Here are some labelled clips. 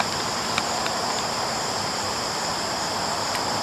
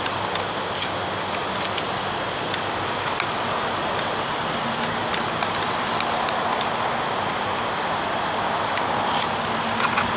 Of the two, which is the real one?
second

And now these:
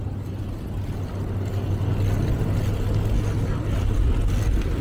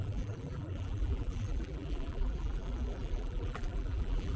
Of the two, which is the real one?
first